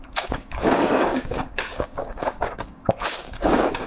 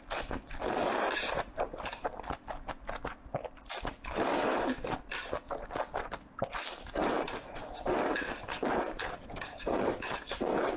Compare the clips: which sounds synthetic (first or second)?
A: first